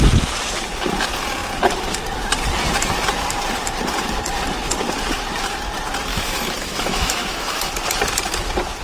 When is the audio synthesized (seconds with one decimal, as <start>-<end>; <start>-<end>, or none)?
6.1-7.7